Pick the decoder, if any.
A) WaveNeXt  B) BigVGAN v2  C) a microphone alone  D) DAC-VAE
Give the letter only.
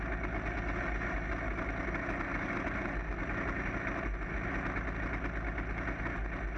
C